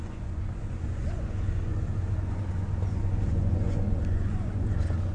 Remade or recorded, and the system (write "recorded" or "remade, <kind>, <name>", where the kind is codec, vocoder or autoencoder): remade, vocoder, Vocos